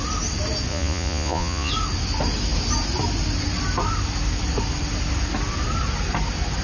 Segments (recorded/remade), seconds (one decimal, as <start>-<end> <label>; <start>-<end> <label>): 0.0-0.7 recorded; 0.7-1.7 remade; 1.7-6.6 recorded